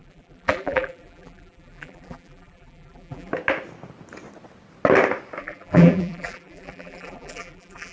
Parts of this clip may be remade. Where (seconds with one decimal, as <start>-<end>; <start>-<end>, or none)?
0.0-3.3; 5.4-7.9